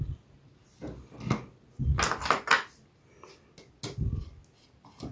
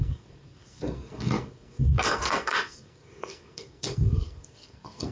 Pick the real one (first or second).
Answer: first